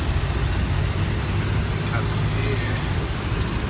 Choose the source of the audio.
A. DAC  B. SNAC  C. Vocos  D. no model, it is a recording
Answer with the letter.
D